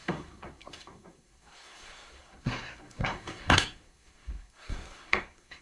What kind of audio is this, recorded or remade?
remade